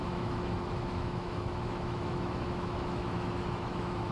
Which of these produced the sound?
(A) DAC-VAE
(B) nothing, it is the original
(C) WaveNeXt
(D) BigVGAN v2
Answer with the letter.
A